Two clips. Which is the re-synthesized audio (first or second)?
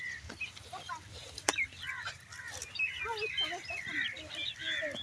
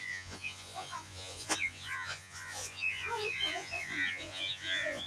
second